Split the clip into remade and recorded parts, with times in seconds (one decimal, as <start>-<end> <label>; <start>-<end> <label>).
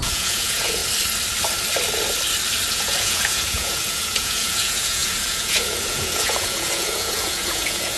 0.0-0.8 remade; 0.8-2.7 recorded; 2.7-8.0 remade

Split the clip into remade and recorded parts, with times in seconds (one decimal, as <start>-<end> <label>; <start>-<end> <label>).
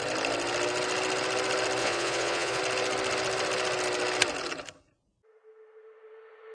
0.0-1.8 recorded; 1.8-2.6 remade; 2.6-6.5 recorded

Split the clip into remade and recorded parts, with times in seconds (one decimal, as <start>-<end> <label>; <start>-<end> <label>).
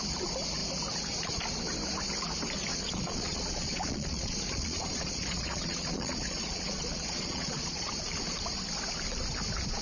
0.0-2.7 recorded; 2.7-7.9 remade; 7.9-9.8 recorded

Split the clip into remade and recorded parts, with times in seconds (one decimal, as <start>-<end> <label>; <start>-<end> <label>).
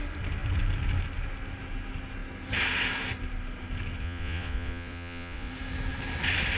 0.0-4.0 recorded; 4.0-5.5 remade; 5.5-6.6 recorded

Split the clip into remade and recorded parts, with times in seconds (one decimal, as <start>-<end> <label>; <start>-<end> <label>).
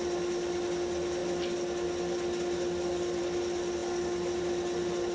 0.0-5.1 recorded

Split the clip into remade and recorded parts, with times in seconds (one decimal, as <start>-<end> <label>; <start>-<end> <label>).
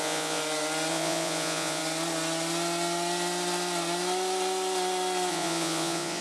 0.0-0.4 remade; 0.4-0.9 recorded; 0.9-1.8 remade; 1.8-5.3 recorded; 5.3-6.2 remade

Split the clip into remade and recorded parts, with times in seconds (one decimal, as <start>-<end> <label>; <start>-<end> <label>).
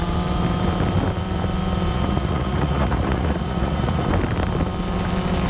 0.0-1.9 recorded; 1.9-4.1 remade; 4.1-5.5 recorded